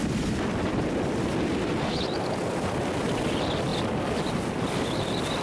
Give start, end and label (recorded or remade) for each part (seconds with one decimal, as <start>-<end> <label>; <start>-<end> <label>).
0.0-3.2 remade; 3.2-5.4 recorded